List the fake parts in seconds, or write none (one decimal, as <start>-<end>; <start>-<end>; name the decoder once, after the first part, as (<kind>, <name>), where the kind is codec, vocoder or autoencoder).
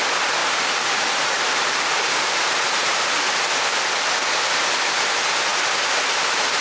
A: 0.4-3.1 (vocoder, BigVGAN v2)